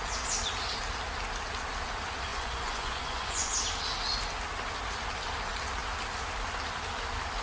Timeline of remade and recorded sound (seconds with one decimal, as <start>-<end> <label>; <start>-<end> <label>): 0.0-2.3 recorded; 2.3-3.5 remade; 3.5-7.4 recorded